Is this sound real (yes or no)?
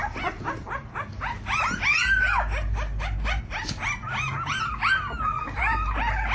yes